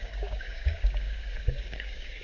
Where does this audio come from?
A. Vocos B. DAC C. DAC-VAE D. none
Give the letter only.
B